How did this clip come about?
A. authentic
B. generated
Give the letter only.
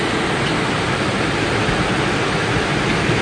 A